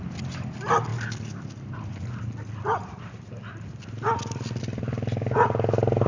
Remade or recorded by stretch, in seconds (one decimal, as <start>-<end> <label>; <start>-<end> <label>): 0.0-6.1 recorded